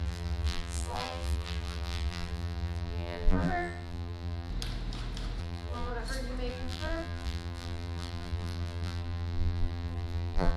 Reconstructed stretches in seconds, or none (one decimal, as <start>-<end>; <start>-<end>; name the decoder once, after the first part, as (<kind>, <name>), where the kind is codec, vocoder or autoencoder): 0.0-4.5 (vocoder, BigVGAN v2); 5.4-5.9; 6.5-10.6